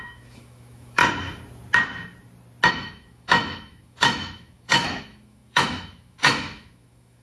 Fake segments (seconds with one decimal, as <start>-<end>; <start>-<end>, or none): 0.0-1.0; 2.7-7.2